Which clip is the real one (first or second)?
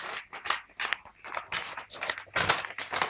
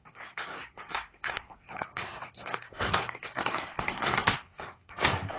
first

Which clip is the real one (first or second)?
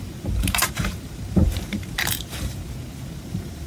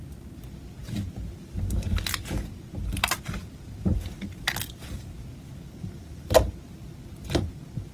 second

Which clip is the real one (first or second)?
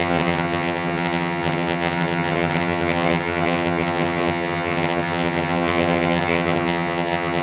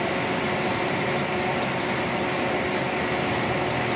second